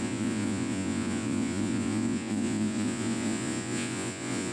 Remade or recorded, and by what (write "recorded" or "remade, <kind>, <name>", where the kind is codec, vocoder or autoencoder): remade, vocoder, Vocos